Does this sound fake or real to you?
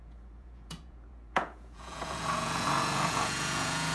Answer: fake